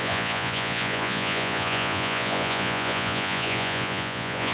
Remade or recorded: remade